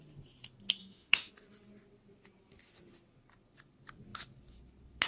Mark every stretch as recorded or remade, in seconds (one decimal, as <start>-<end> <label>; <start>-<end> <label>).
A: 0.0-0.8 recorded; 0.8-1.3 remade; 1.3-5.1 recorded